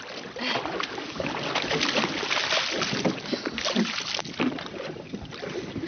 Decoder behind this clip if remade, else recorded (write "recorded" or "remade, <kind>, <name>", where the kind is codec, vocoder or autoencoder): recorded